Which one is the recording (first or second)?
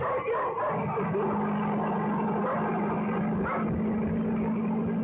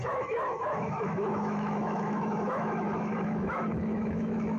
first